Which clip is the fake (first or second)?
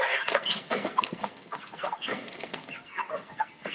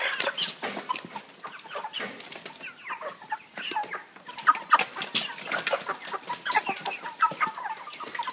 first